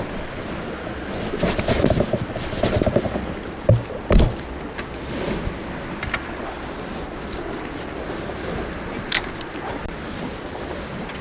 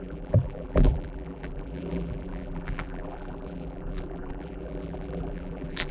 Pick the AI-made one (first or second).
second